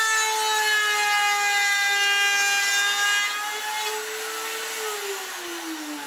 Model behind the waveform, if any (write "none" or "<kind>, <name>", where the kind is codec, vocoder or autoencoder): none